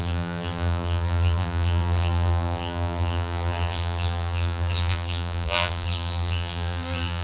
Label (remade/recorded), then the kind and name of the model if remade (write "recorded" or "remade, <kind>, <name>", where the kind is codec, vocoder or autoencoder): remade, vocoder, BigVGAN v2